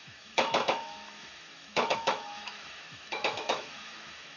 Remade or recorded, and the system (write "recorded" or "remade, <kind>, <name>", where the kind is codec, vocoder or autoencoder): remade, autoencoder, DAC-VAE